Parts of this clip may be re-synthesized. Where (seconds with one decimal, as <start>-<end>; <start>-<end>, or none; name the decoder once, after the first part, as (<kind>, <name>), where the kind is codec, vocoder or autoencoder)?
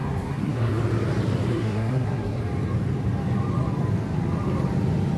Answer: 0.0-0.8 (codec, SNAC); 1.5-2.4